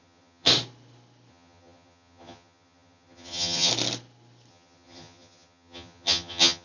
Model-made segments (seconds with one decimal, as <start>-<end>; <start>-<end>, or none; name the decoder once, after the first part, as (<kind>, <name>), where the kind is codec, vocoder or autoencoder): 0.0-0.5 (vocoder, HiFi-GAN); 1.3-3.7; 4.5-6.6